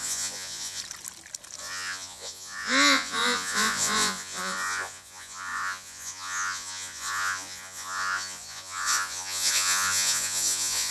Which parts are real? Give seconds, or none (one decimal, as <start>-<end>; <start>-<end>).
0.8-1.6